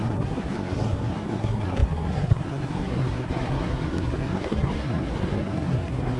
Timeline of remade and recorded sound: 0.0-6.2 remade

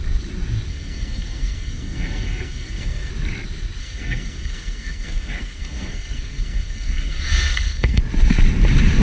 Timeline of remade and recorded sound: 0.0-0.7 recorded; 0.7-3.1 remade; 3.1-3.8 recorded; 3.8-8.0 remade; 8.0-9.0 recorded